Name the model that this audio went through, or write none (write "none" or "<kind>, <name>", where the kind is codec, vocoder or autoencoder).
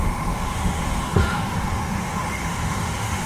autoencoder, DAC-VAE